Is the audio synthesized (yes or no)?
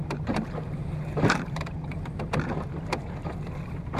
yes